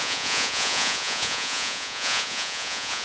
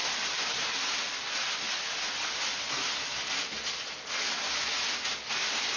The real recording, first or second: second